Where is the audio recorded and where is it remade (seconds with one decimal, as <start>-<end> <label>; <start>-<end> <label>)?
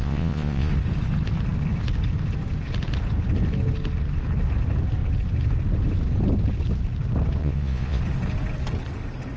0.0-0.7 remade; 0.7-7.4 recorded; 7.4-8.0 remade; 8.0-9.4 recorded